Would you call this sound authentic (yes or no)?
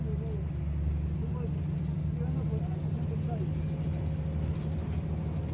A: yes